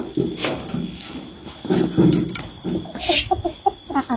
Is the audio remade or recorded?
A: recorded